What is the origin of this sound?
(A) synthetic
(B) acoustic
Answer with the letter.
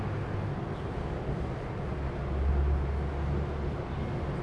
B